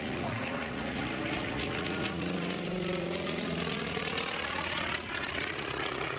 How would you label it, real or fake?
fake